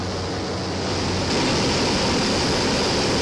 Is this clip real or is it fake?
real